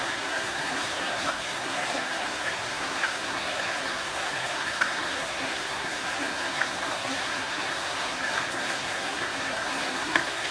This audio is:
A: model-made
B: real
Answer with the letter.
A